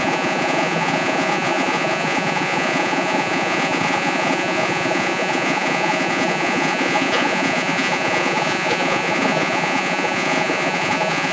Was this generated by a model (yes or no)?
yes